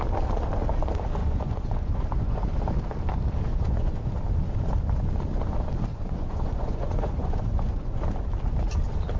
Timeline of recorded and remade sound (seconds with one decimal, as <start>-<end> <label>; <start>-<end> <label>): 0.0-1.2 recorded; 1.2-2.4 remade; 2.4-3.5 recorded; 3.5-4.1 remade; 4.1-5.9 recorded; 5.9-8.0 remade; 8.0-9.2 recorded